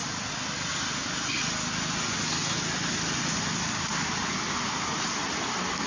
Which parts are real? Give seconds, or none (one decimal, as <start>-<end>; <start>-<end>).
0.0-5.9